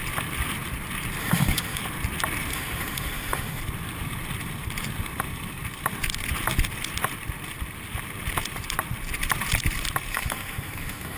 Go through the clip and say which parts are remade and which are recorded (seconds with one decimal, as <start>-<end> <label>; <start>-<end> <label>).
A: 0.0-1.2 recorded; 1.2-1.8 remade; 1.8-2.5 recorded; 2.5-3.6 remade; 3.6-10.1 recorded; 10.1-11.2 remade